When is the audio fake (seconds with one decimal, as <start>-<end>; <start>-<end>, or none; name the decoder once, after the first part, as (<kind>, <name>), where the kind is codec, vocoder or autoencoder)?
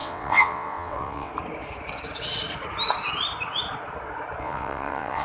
0.0-1.3 (vocoder, WaveNeXt); 4.4-5.2